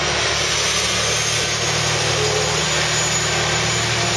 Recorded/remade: recorded